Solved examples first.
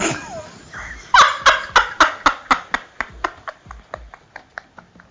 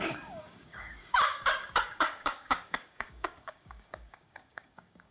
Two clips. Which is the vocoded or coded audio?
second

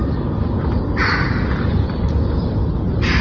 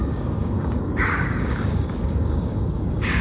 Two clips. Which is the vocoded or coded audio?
second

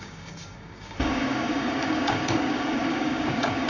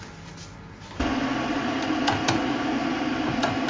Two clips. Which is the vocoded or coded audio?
first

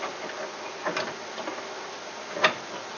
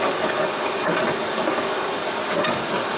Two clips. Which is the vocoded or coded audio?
second